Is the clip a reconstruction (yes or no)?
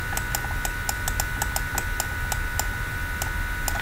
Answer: no